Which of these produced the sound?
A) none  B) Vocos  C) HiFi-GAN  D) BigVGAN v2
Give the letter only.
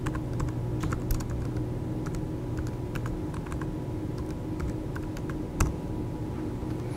A